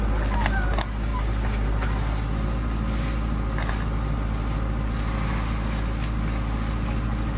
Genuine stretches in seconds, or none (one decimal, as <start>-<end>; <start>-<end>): 0.0-7.4